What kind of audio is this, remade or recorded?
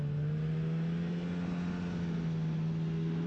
recorded